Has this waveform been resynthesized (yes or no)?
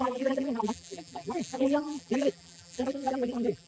yes